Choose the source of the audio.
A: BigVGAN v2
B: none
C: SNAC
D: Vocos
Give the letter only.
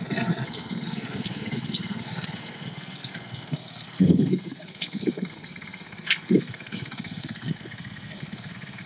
C